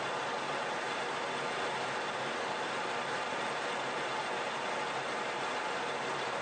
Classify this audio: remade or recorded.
recorded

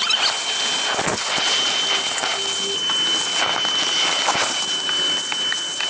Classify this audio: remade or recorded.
recorded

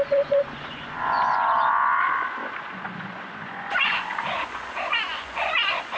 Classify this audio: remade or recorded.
remade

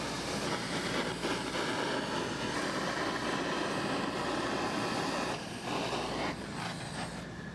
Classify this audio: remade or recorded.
recorded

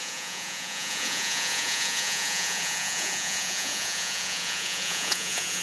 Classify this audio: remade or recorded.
remade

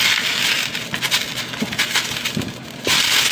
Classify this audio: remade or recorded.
recorded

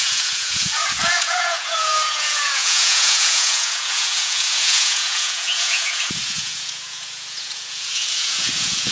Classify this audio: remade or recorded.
remade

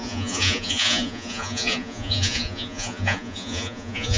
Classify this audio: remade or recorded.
remade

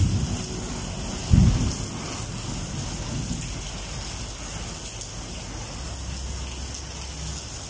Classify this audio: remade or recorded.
recorded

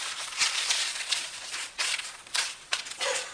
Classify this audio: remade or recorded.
remade